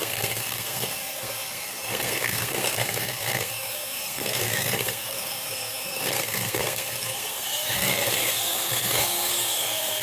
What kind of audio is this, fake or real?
fake